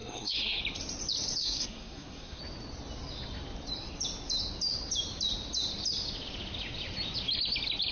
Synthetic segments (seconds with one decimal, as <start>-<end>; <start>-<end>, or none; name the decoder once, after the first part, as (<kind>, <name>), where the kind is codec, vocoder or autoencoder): 0.0-0.6 (codec, SNAC); 1.4-2.4